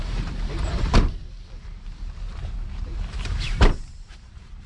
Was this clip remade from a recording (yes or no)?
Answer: yes